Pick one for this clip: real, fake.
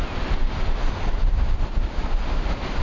real